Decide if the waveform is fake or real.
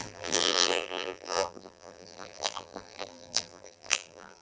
fake